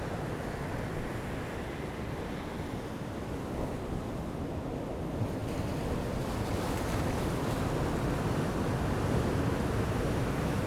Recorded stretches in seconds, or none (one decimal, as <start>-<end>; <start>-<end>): 0.0-10.7